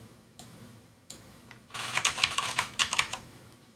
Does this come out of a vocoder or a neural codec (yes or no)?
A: yes